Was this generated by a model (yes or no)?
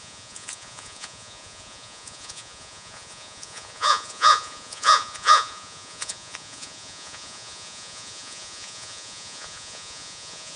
yes